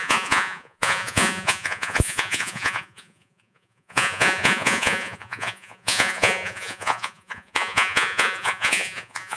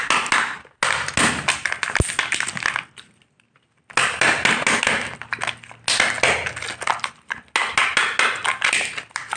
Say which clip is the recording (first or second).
second